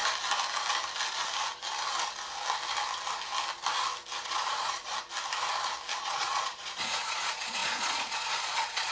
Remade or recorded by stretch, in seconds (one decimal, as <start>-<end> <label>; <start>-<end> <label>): 0.0-4.2 recorded; 4.2-4.9 remade; 4.9-6.0 recorded; 6.0-8.9 remade